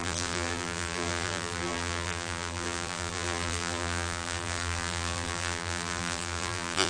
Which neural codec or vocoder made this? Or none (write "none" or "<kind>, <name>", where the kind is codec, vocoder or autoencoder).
vocoder, BigVGAN v2